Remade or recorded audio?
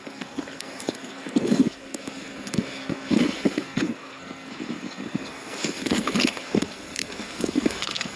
remade